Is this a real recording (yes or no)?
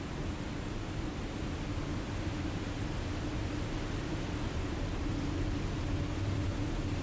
yes